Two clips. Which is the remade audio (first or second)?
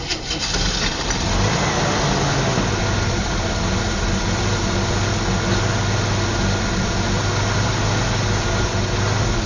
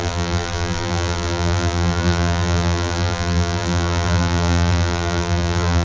second